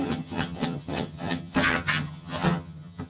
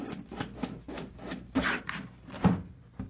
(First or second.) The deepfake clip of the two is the first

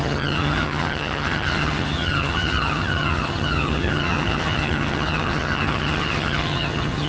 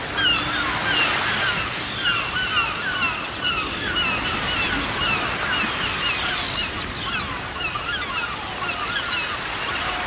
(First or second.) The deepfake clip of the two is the first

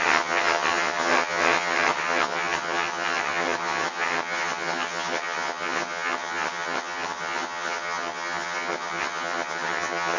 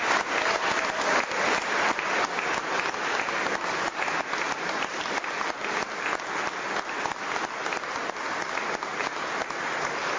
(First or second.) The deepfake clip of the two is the first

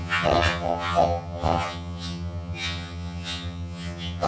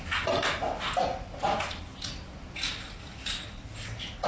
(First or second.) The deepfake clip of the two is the first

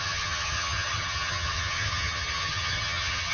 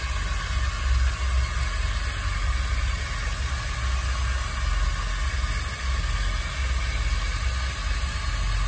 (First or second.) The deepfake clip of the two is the first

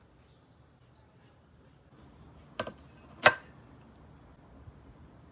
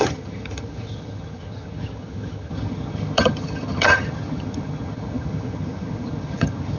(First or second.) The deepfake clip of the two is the second